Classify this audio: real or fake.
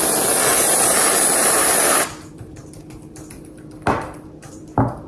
real